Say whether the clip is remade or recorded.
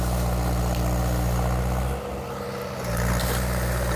recorded